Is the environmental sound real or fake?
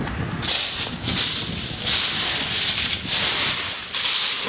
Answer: real